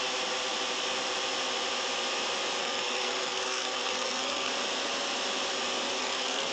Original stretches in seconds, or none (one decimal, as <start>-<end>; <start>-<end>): 0.0-2.6; 4.5-6.0

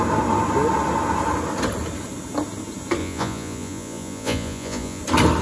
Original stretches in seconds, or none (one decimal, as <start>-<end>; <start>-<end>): 0.0-3.0; 5.0-5.4

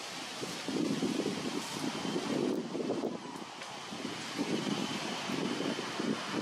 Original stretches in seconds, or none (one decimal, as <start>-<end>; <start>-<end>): 0.0-4.8; 5.5-6.4

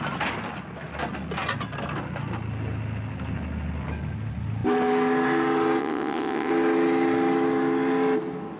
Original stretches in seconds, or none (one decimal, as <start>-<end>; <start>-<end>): 0.0-5.8; 6.5-8.6

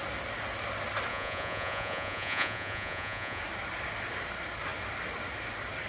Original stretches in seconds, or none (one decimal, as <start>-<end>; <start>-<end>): 0.0-1.1; 3.4-5.9

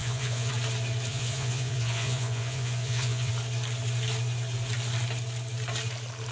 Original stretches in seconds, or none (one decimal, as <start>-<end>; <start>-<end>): 0.5-1.1; 3.3-6.3